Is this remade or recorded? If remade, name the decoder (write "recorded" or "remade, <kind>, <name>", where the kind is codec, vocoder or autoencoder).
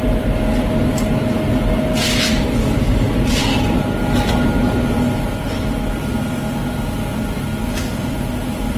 recorded